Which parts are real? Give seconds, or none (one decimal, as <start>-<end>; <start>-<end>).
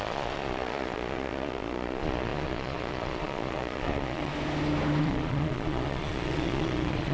4.3-5.0